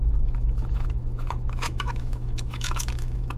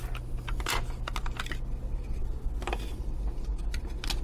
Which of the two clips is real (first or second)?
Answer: second